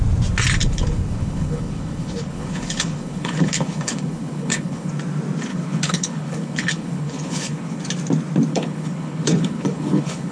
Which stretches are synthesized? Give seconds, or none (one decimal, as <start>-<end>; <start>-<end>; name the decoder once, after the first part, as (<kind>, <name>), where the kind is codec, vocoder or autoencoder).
0.6-4.9 (codec, HILCodec); 5.5-7.8; 8.5-10.3